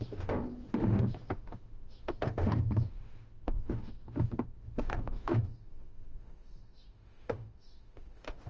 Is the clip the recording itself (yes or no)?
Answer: no